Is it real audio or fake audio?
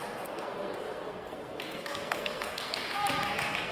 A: fake